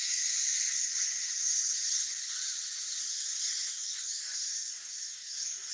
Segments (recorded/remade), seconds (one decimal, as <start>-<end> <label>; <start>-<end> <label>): 0.0-3.1 recorded; 3.1-5.7 remade